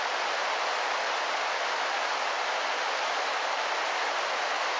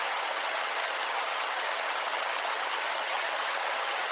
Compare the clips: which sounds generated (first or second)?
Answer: second